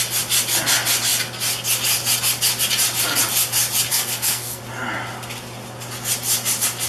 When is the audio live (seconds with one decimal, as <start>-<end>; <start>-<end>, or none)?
0.0-3.9; 4.6-6.9